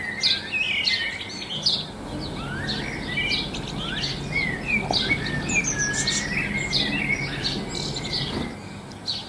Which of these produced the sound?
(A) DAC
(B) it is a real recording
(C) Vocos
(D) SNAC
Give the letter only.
B